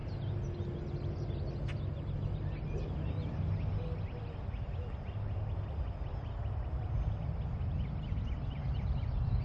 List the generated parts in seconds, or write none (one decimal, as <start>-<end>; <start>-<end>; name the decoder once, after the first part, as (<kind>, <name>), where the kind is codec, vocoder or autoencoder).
none